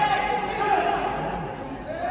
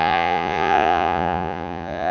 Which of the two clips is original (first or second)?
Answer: first